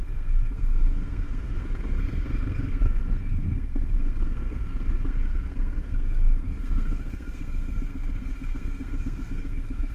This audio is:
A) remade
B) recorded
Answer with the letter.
A